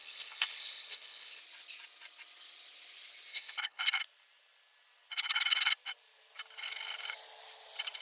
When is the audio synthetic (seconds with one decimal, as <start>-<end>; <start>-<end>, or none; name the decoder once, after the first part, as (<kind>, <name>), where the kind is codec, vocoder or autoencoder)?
0.0-1.4 (codec, HILCodec); 3.3-3.8